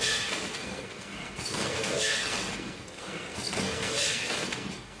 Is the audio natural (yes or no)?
no